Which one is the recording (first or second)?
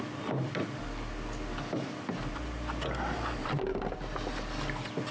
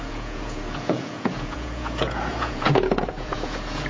first